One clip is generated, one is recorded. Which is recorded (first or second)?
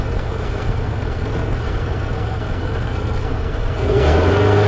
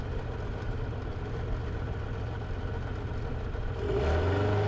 second